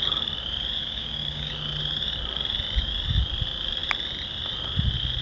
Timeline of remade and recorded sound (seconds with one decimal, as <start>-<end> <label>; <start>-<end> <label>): 0.0-0.8 recorded; 0.8-1.5 remade; 1.5-5.2 recorded